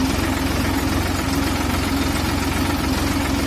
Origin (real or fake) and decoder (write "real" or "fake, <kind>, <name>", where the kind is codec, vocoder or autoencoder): real